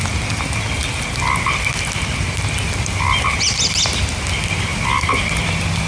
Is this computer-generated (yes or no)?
no